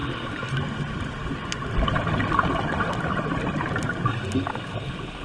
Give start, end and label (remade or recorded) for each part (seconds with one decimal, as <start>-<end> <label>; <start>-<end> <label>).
0.0-5.2 recorded

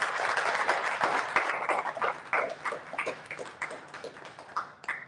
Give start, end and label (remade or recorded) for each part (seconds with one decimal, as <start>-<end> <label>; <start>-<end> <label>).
0.0-2.9 recorded; 2.9-3.4 remade; 3.4-5.1 recorded

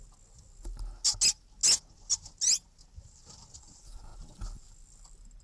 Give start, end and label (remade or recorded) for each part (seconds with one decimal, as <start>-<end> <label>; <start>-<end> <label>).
0.0-5.4 recorded

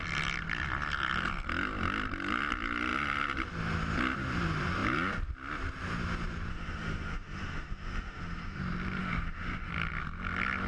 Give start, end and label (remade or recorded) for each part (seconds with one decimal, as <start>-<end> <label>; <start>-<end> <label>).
0.0-6.5 recorded; 6.5-8.6 remade; 8.6-9.0 recorded; 9.0-9.7 remade; 9.7-10.7 recorded

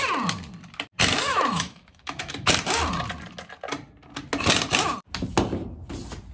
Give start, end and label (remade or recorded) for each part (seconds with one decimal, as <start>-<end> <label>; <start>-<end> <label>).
0.0-1.3 recorded; 1.3-2.5 remade; 2.5-6.3 recorded

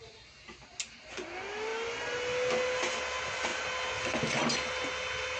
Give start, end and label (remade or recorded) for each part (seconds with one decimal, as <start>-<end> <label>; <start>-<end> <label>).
0.0-5.4 recorded

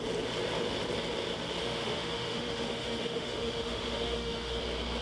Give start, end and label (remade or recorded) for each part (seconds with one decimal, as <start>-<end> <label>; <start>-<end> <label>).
0.0-1.6 recorded; 1.6-4.6 remade; 4.6-5.0 recorded

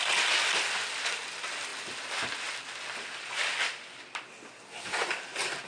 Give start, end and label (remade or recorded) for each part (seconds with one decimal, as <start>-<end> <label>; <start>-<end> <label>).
0.0-5.7 recorded